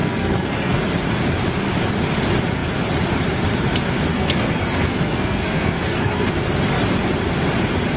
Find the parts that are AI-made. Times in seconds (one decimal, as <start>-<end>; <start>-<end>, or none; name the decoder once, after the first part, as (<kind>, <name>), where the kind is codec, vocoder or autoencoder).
0.0-0.8 (codec, SNAC); 4.1-6.4